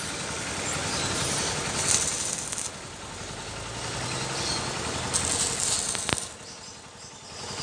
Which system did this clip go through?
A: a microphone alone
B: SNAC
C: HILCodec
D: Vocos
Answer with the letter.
A